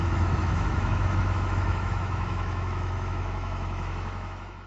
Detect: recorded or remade remade